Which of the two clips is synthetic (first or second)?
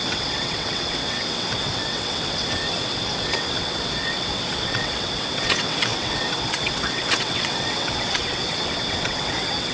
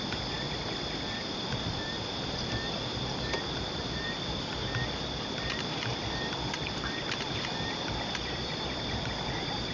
first